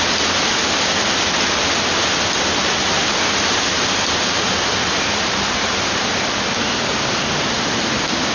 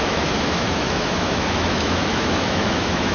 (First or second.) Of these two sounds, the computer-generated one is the second